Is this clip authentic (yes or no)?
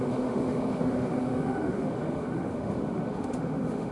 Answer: no